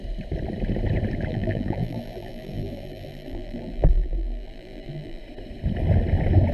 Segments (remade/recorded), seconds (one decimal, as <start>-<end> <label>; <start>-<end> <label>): 0.0-1.3 recorded; 1.3-5.2 remade; 5.2-6.5 recorded